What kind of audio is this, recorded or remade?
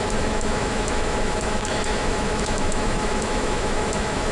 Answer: remade